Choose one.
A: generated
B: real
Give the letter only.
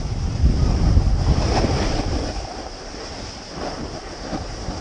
B